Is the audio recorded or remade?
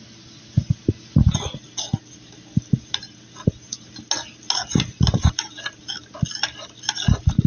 recorded